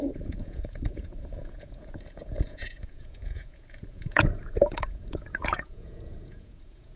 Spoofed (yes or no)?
yes